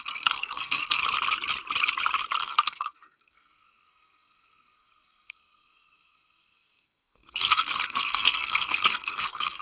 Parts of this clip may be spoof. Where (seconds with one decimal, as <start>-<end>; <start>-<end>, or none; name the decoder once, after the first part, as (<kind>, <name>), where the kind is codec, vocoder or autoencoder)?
0.0-1.0 (codec, SNAC); 2.4-9.6